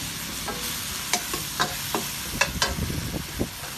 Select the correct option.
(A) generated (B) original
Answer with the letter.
B